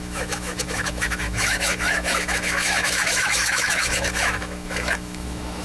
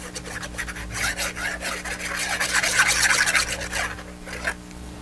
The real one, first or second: second